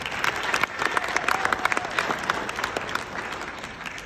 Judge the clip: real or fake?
real